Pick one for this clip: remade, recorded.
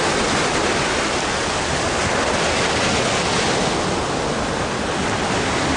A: recorded